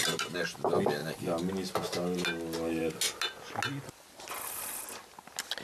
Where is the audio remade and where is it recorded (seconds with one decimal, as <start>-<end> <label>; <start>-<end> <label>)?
0.0-5.6 recorded